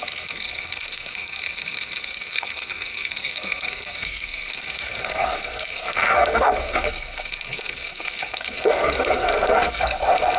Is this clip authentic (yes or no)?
no